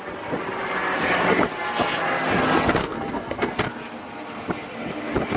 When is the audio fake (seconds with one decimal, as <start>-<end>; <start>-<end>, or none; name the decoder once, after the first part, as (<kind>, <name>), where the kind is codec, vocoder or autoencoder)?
2.8-3.7 (codec, SNAC)